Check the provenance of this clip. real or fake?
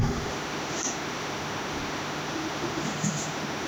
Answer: fake